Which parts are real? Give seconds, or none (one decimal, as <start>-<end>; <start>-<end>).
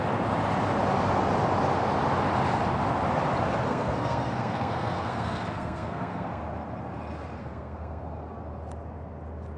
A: 0.0-3.7; 6.4-7.4; 8.0-9.6